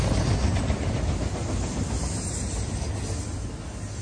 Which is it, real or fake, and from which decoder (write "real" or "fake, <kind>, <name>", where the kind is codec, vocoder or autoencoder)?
real